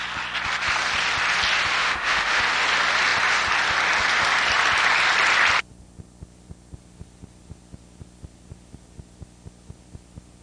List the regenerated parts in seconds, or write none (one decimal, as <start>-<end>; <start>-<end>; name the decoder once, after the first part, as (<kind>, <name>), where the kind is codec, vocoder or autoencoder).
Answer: 1.8-2.4 (autoencoder, DAC-VAE)